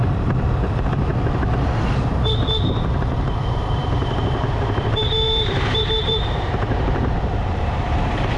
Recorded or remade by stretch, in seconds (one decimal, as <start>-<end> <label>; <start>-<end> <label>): 0.0-1.1 remade; 1.1-3.0 recorded; 3.0-8.4 remade